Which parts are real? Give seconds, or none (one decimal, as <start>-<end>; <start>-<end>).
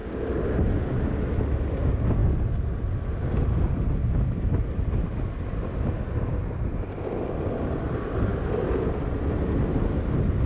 0.0-10.5